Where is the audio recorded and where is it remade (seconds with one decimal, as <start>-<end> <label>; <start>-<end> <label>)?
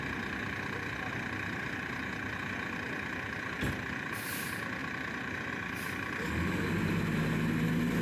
0.0-8.0 recorded